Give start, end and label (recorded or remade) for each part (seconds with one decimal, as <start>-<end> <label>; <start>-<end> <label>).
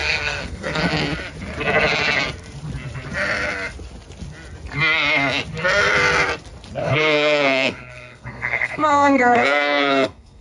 0.0-0.8 remade; 0.8-6.8 recorded; 6.8-10.4 remade